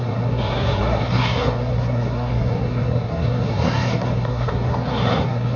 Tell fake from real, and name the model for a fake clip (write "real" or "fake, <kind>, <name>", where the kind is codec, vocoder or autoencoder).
fake, codec, SNAC